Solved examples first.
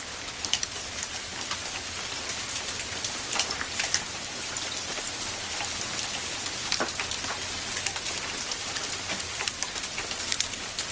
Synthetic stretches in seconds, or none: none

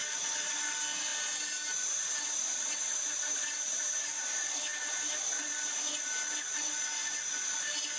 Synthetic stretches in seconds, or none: none